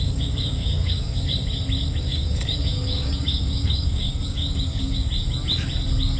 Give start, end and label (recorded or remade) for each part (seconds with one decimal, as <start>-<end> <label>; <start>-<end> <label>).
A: 0.0-1.4 remade; 1.4-2.0 recorded; 2.0-5.0 remade; 5.0-6.2 recorded